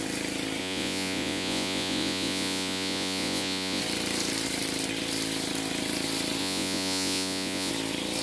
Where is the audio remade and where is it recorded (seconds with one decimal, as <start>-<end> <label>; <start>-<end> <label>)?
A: 0.0-0.6 recorded; 0.6-3.8 remade; 3.8-6.4 recorded; 6.4-7.7 remade; 7.7-8.2 recorded